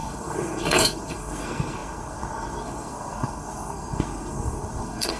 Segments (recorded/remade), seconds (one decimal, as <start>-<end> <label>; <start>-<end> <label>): 0.0-5.2 remade